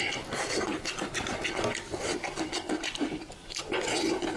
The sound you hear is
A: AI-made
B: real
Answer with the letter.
B